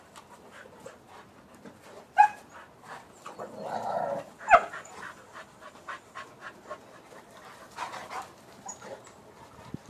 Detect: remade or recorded recorded